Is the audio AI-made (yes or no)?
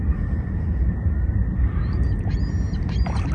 no